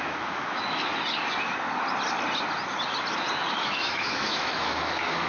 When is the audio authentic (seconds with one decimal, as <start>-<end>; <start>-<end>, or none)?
0.9-3.5